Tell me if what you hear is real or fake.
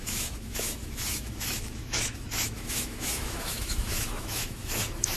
fake